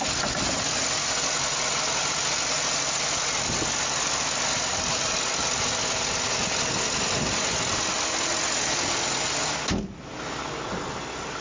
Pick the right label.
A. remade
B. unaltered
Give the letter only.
B